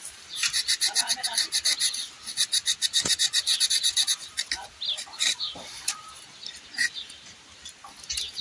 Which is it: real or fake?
real